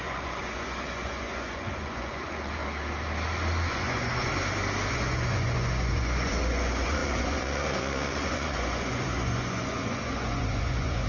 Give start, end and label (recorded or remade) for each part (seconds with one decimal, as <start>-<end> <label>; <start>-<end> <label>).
0.0-2.6 remade; 2.6-3.7 recorded; 3.7-4.3 remade; 4.3-4.9 recorded; 4.9-11.1 remade